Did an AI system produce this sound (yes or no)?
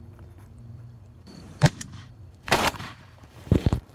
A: yes